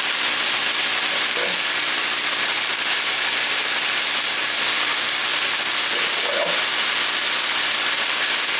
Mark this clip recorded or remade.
recorded